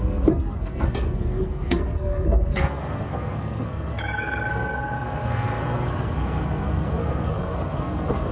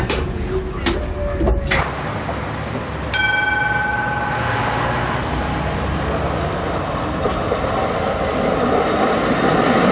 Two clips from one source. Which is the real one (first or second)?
second